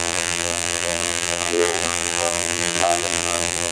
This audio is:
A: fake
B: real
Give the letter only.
A